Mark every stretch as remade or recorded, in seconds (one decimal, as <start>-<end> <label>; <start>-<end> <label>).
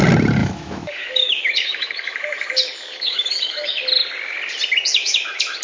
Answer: 0.0-0.4 recorded; 0.4-3.8 remade; 3.8-4.9 recorded; 4.9-5.6 remade